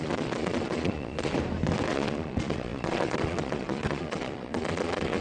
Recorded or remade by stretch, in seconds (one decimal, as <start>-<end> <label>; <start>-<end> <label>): 0.0-1.3 remade; 1.3-1.9 recorded; 1.9-5.2 remade